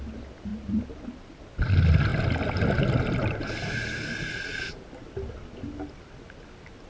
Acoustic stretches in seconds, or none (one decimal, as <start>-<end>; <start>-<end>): 0.0-6.9